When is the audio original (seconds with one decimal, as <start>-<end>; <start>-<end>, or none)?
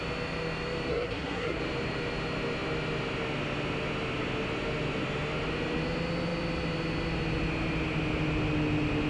0.0-0.9; 1.6-9.1